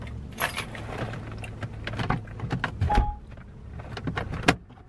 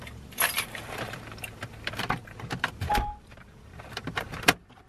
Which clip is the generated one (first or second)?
second